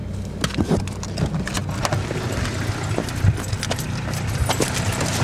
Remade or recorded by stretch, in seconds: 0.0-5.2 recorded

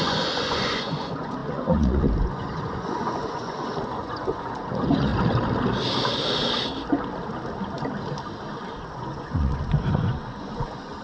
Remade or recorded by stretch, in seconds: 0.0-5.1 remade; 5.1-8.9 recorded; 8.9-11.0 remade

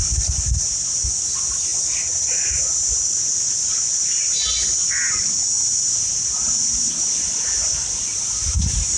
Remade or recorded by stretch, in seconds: 0.0-1.7 remade; 1.7-5.4 recorded; 5.4-6.7 remade; 6.7-7.2 recorded; 7.2-9.0 remade